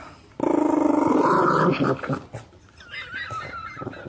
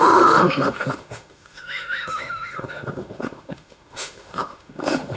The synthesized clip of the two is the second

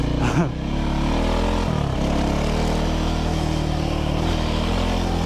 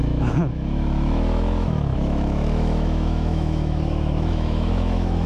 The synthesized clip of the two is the second